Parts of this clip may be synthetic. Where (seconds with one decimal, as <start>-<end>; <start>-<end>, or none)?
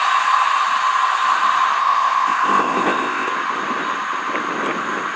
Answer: 1.8-3.3